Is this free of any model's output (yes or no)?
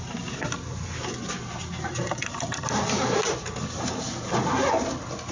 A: yes